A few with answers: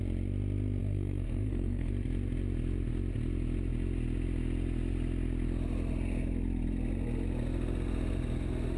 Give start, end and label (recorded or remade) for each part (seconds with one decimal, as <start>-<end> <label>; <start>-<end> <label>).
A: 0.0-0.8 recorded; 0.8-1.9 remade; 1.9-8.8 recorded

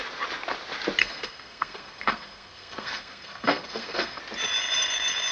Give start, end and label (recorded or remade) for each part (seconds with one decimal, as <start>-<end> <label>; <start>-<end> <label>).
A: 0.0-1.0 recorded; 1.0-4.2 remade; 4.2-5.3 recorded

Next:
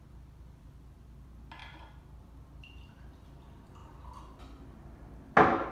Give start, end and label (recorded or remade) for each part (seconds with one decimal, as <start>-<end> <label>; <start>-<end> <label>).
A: 0.0-3.8 recorded; 3.8-4.4 remade; 4.4-5.7 recorded